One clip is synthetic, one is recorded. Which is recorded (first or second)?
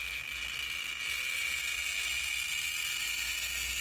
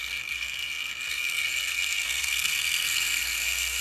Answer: first